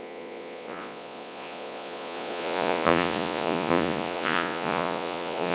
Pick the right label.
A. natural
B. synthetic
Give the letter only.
B